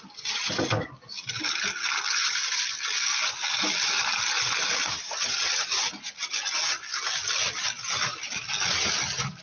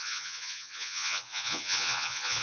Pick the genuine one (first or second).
first